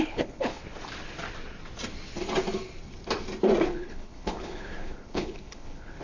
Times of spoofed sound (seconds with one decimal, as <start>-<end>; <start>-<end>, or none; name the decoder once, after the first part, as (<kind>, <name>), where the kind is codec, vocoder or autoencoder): 0.0-0.6 (codec, HILCodec); 3.6-6.0